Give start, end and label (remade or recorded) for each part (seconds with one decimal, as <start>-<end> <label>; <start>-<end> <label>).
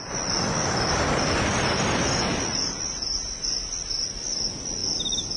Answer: 0.0-5.4 recorded